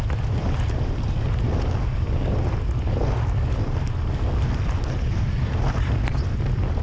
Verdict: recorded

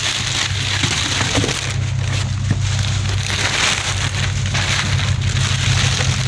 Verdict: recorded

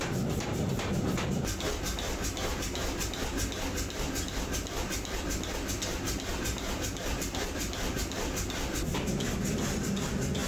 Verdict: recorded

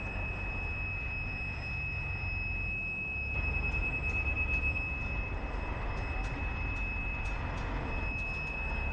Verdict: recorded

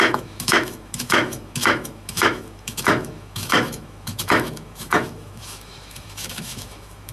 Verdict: remade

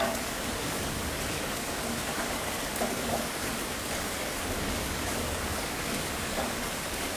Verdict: remade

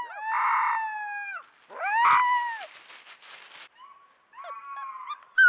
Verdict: recorded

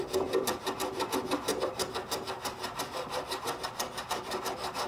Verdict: recorded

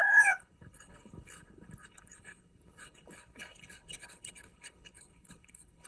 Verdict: remade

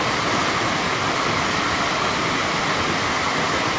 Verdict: recorded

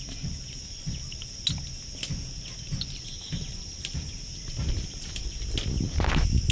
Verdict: recorded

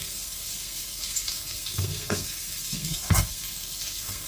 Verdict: remade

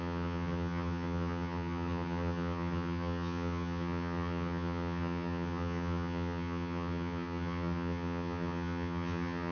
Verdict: remade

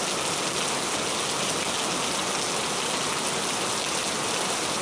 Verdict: recorded